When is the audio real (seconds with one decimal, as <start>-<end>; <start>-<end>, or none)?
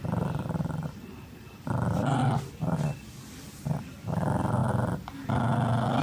2.2-3.8; 4.6-5.3